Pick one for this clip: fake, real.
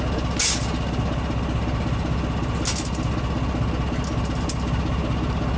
real